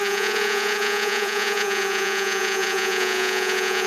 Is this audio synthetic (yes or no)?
yes